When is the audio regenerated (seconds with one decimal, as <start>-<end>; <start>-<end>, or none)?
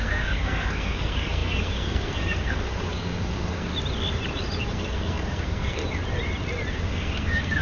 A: 0.0-3.7; 4.7-5.8; 6.7-7.6